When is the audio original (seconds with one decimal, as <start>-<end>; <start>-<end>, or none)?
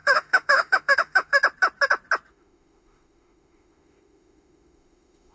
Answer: 1.4-2.3